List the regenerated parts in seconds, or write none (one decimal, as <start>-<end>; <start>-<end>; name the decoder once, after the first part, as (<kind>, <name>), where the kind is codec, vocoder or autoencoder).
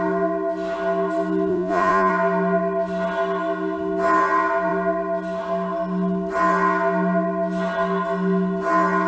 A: 1.5-2.1 (vocoder, Vocos)